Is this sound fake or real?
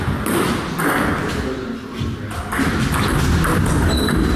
real